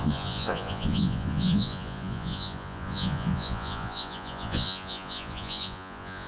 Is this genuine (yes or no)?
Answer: no